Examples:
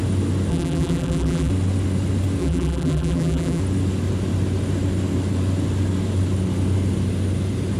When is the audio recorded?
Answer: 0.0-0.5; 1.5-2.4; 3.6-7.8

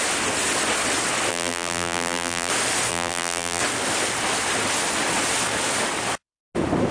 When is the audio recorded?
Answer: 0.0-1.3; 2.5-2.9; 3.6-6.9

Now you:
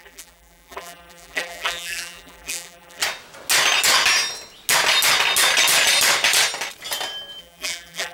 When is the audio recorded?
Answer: 3.0-7.4